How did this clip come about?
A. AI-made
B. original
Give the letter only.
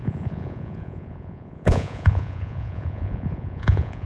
A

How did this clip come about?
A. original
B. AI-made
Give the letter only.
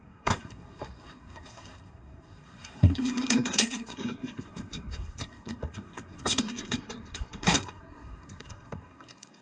B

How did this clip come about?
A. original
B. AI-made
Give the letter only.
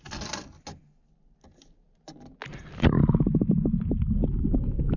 A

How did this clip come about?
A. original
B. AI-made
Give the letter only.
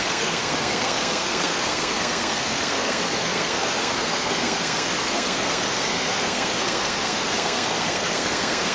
B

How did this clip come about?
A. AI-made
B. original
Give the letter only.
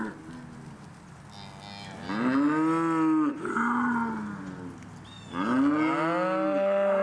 B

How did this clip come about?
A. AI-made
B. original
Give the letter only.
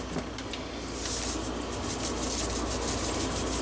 B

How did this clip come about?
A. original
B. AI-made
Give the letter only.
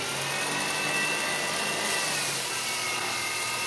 A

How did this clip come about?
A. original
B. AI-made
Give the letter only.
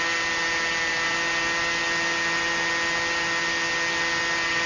A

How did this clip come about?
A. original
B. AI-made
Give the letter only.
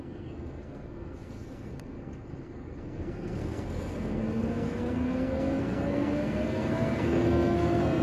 B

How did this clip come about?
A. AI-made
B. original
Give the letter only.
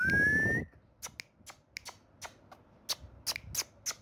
B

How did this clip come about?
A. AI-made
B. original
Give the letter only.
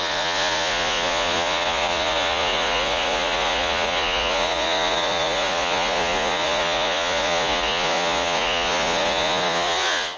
A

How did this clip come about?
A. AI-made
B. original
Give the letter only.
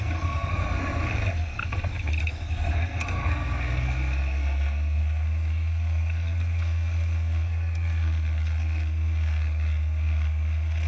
A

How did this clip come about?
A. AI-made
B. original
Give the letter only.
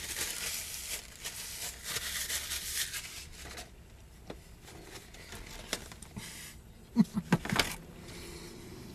B